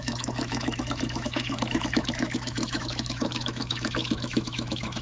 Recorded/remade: remade